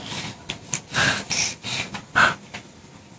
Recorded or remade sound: recorded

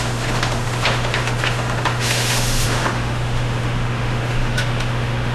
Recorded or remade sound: remade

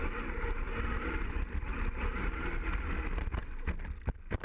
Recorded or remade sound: recorded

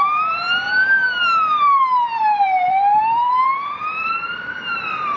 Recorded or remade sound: remade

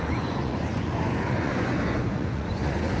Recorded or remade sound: remade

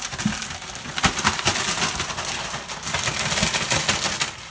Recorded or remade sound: recorded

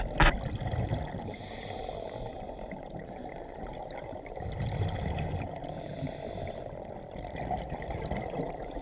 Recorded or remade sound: recorded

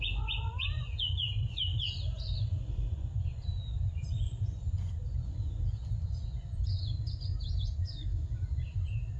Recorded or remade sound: remade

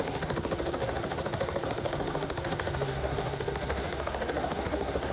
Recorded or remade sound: remade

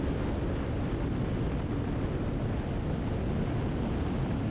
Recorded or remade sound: recorded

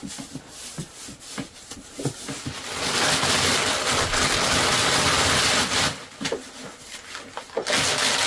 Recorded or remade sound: recorded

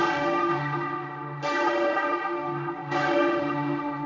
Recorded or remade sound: remade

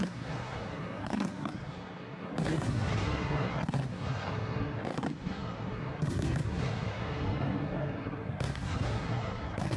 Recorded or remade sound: remade